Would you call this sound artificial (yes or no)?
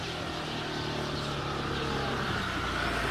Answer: no